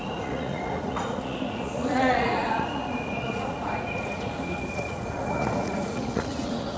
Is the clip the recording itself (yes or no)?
no